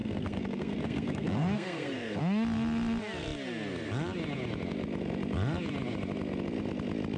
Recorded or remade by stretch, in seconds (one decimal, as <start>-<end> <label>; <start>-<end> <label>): 0.0-2.2 remade; 2.2-7.2 recorded